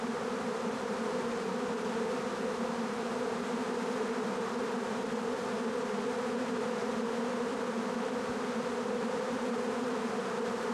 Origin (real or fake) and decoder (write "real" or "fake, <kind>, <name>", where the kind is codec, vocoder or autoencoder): fake, vocoder, BigVGAN v2